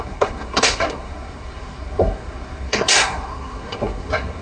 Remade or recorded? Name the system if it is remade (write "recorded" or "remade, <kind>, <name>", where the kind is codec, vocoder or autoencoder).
remade, codec, SNAC